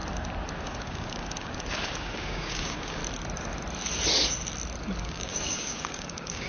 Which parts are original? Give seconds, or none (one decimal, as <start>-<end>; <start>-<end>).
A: 0.0-0.6; 3.0-5.0